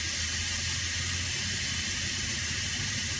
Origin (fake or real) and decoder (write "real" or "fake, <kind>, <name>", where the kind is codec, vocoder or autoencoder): real